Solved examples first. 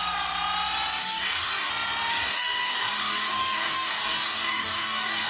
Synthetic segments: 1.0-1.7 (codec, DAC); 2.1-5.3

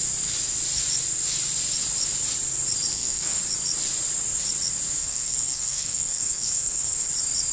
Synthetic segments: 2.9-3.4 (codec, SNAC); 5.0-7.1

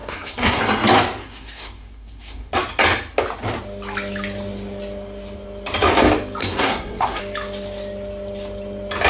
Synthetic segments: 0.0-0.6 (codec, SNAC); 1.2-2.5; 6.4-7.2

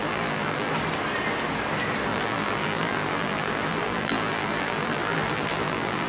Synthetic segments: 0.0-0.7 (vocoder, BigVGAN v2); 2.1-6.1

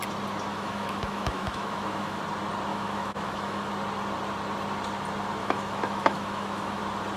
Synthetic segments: 0.5-2.2 (autoencoder, DAC-VAE); 2.7-3.7; 5.4-6.8

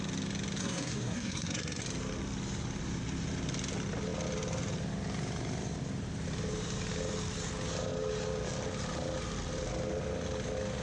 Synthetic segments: 0.6-1.8 (codec, SNAC)

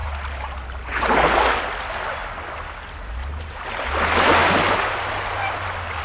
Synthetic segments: none